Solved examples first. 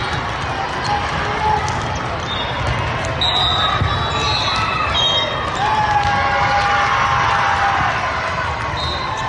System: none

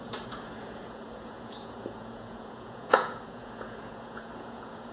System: vocoder, Vocos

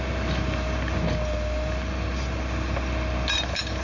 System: none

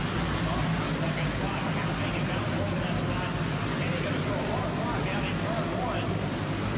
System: none